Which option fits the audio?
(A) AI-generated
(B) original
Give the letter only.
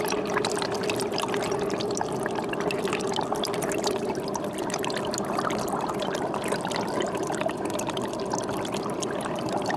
B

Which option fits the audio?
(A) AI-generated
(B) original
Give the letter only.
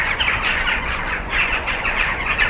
A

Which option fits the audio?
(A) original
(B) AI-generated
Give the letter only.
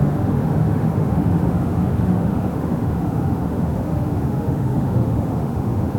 B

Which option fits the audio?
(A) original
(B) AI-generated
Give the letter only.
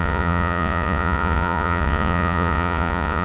B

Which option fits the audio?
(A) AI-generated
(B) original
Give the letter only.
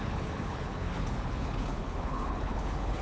A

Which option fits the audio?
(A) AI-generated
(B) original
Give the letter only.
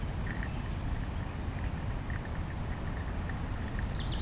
B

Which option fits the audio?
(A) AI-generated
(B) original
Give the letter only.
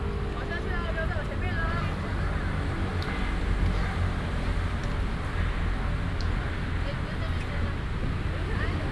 B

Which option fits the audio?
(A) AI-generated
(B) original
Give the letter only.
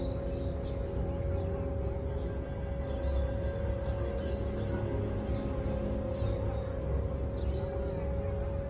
B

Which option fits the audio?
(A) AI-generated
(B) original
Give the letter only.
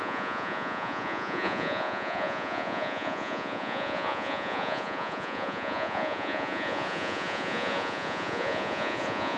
A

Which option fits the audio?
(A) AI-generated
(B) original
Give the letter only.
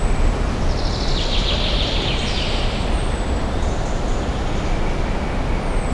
B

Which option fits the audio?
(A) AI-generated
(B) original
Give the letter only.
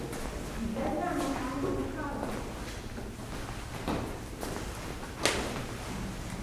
B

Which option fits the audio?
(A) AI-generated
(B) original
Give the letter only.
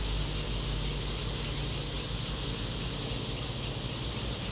B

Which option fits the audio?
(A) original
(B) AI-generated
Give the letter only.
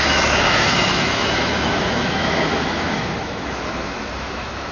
B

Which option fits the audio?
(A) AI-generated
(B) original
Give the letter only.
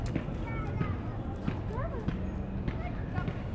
B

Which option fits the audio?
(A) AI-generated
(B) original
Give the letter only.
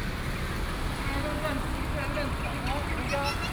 B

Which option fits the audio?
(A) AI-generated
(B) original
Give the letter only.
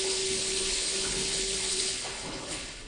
A